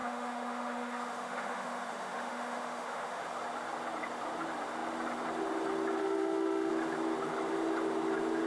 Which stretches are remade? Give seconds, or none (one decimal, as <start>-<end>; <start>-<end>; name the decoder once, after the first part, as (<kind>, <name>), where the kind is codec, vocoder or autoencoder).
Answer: 0.0-3.2 (autoencoder, DAC-VAE); 6.0-6.7